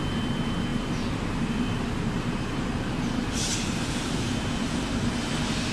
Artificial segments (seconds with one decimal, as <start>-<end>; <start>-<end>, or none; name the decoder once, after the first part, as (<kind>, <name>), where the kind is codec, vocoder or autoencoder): 0.7-4.1 (vocoder, BigVGAN v2)